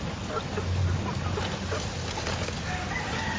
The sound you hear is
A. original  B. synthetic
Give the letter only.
A